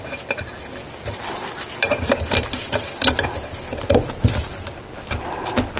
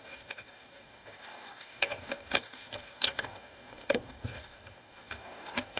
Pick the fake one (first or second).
second